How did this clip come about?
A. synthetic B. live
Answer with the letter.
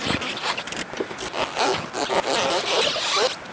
B